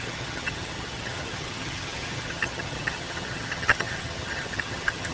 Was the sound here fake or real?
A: fake